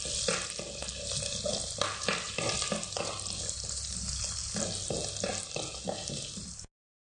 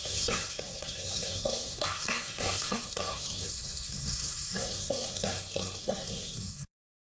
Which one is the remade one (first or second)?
second